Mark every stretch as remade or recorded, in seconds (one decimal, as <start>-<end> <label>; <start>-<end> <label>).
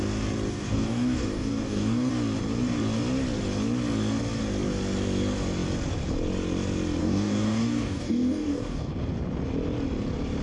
0.0-0.5 recorded; 0.5-2.1 remade; 2.1-7.0 recorded; 7.0-8.9 remade; 8.9-10.4 recorded